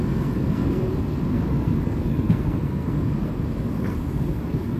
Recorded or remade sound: remade